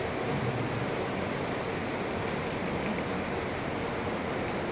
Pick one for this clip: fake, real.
real